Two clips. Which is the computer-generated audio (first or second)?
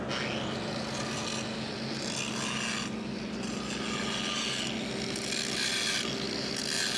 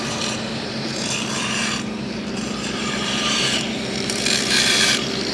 second